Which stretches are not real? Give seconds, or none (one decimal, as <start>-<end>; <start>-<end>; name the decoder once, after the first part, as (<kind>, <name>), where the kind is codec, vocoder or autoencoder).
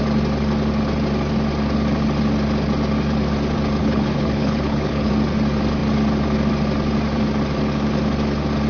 3.8-5.1 (codec, HILCodec)